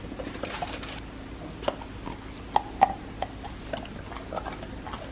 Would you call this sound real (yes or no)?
yes